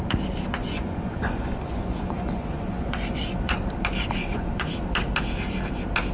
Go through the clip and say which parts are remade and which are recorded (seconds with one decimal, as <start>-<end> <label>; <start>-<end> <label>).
0.0-0.6 recorded; 0.6-3.6 remade; 3.6-4.2 recorded; 4.2-4.7 remade; 4.7-6.1 recorded